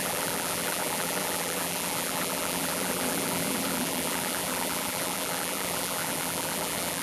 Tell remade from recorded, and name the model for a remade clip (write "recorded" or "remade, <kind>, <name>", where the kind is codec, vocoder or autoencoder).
remade, vocoder, BigVGAN v2